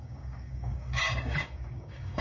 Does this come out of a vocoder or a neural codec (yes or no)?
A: yes